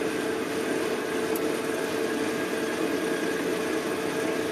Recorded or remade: recorded